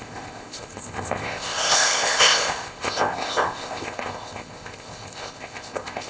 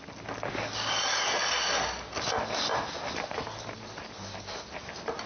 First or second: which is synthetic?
first